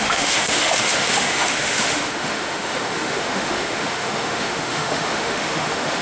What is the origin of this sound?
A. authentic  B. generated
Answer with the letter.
B